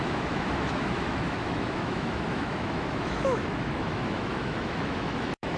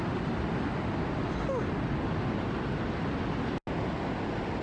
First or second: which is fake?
first